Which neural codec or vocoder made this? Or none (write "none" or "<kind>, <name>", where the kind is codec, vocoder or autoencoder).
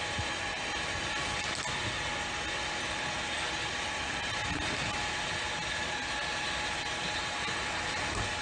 none